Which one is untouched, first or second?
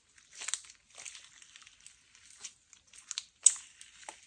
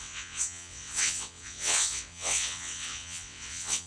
first